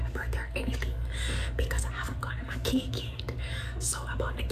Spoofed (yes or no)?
yes